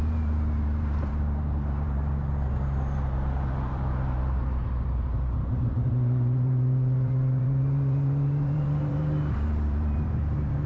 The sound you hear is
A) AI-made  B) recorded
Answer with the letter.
A